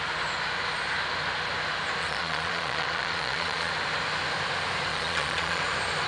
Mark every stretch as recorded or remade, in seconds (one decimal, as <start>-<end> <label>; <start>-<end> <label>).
0.0-2.0 recorded; 2.0-3.7 remade; 3.7-4.9 recorded; 4.9-5.6 remade; 5.6-6.1 recorded